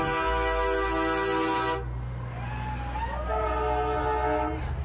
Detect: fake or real real